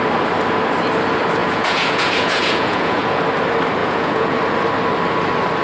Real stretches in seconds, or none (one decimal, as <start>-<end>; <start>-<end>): 0.0-1.4; 3.2-3.8; 4.4-5.6